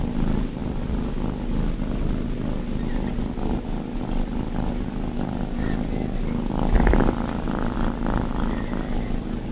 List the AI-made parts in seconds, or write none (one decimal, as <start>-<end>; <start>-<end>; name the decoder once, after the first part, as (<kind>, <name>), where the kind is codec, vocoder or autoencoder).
none